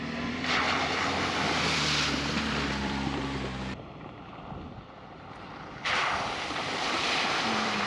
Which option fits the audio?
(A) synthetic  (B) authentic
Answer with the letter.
A